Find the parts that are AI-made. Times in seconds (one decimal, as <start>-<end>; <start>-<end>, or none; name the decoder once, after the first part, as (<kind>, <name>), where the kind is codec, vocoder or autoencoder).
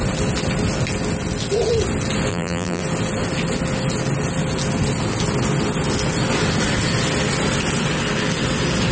2.3-2.8 (vocoder, BigVGAN v2)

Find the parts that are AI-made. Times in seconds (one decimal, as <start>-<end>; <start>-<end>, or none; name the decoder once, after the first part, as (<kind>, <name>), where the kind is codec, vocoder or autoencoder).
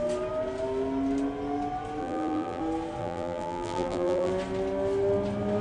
2.0-2.6 (vocoder, BigVGAN v2); 3.0-4.3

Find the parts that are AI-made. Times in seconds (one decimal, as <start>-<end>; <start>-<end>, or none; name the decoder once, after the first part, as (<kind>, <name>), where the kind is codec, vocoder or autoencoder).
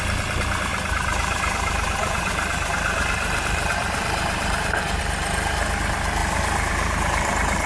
0.7-5.0 (vocoder, BigVGAN v2); 6.2-7.7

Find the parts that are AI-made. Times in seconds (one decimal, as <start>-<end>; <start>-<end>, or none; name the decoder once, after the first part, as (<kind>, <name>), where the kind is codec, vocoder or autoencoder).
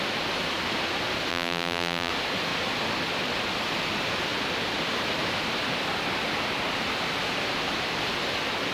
1.3-2.1 (vocoder, BigVGAN v2)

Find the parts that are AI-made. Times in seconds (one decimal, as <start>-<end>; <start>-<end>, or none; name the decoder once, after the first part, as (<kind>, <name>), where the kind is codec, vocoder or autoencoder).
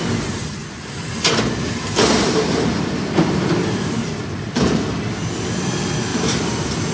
0.6-4.7 (vocoder, BigVGAN v2); 6.1-6.9